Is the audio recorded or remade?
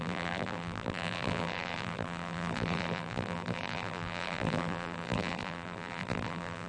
remade